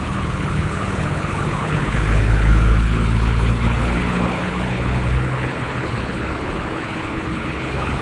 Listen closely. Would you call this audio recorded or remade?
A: remade